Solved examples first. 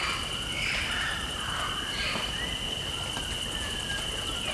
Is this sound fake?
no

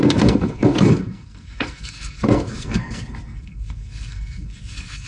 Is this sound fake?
yes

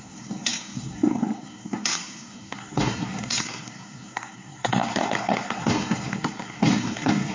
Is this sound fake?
yes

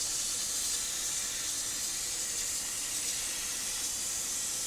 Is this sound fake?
no